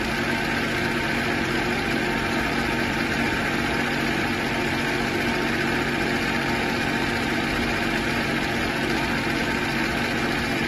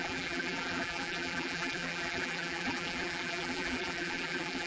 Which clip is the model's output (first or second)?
second